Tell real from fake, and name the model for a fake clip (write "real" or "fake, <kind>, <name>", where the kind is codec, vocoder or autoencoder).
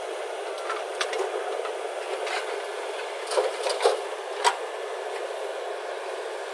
real